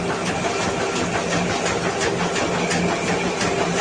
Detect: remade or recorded recorded